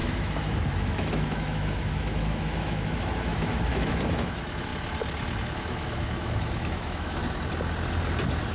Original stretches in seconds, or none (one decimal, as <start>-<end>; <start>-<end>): 4.7-5.4; 7.2-8.5